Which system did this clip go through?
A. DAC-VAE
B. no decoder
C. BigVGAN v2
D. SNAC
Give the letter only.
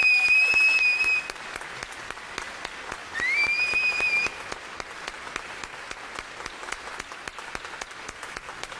B